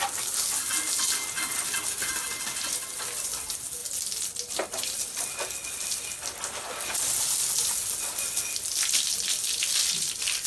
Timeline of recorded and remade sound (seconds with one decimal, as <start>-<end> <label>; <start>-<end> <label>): 0.0-10.5 recorded

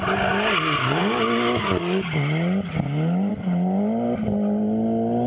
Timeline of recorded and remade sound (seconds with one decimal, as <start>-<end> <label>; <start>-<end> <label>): 0.0-5.3 recorded